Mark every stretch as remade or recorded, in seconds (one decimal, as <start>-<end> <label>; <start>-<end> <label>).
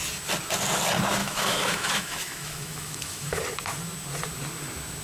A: 0.0-1.2 recorded; 1.2-3.4 remade; 3.4-5.0 recorded